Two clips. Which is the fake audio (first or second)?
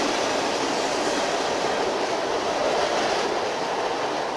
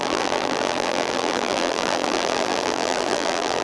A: second